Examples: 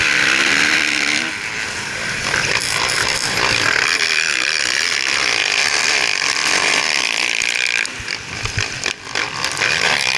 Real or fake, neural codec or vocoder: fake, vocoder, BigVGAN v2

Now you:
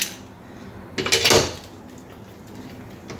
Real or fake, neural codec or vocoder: real